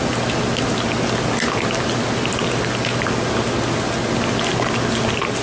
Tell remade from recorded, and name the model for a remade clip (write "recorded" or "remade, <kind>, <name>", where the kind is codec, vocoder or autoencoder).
recorded